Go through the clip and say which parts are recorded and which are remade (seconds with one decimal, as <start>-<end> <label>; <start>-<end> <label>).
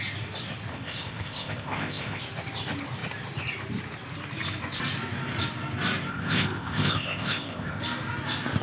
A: 0.0-0.7 recorded; 0.7-2.2 remade; 2.2-6.1 recorded; 6.1-7.8 remade; 7.8-8.6 recorded